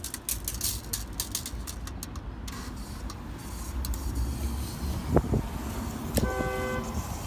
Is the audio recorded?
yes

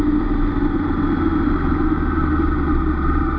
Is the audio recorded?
yes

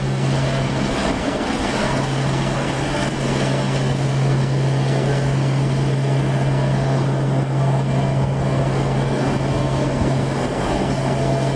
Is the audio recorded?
no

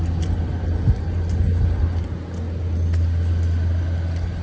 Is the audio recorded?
yes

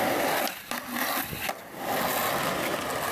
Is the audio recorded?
yes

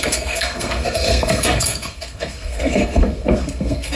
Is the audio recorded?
no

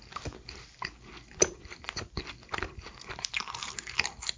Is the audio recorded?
yes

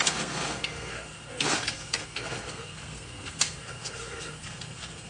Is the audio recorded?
no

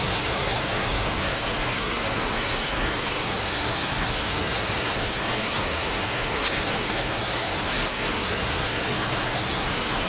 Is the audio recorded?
no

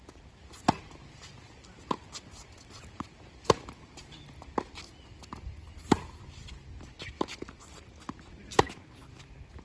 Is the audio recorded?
yes